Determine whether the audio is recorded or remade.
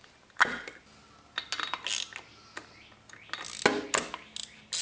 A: recorded